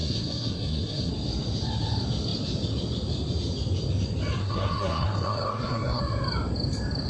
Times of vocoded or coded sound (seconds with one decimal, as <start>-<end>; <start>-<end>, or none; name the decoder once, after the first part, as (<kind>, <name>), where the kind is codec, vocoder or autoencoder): 0.0-1.1 (codec, SNAC); 4.4-6.0